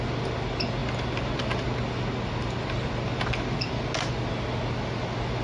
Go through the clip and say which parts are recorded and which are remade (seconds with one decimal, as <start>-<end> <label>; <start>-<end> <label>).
0.0-5.4 recorded